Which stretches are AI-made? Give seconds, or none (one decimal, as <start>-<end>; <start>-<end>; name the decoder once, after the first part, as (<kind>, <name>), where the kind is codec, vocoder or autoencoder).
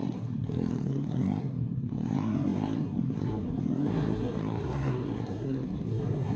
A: 0.0-6.4 (codec, SNAC)